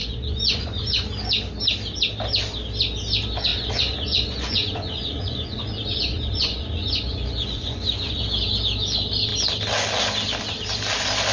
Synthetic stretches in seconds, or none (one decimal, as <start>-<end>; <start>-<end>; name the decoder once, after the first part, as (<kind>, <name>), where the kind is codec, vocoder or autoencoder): 0.0-1.1 (vocoder, Vocos); 3.5-8.2